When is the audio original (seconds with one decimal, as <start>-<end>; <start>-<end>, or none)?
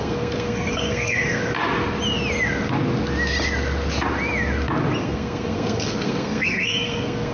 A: 1.4-5.0